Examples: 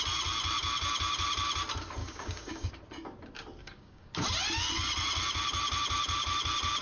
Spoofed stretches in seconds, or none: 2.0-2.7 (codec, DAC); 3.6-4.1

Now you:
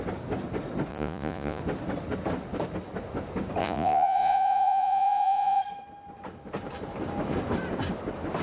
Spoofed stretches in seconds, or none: 0.9-1.6 (vocoder, Vocos); 3.6-5.6